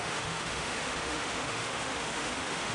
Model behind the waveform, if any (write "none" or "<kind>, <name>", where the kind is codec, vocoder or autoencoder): autoencoder, DAC-VAE